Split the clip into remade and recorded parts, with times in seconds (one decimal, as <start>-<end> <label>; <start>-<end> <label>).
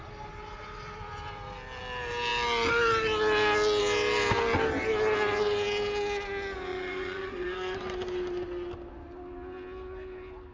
0.0-6.7 recorded; 6.7-7.8 remade; 7.8-10.5 recorded